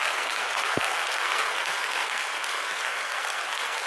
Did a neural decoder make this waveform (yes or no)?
yes